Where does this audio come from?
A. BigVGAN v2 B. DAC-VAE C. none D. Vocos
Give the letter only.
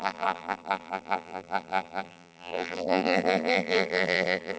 A